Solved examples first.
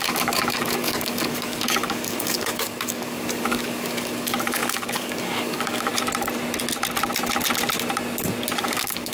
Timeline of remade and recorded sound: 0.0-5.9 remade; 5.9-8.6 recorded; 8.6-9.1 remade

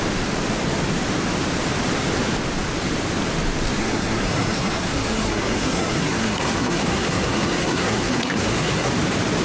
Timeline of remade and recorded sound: 0.0-3.8 recorded; 3.8-8.9 remade; 8.9-9.4 recorded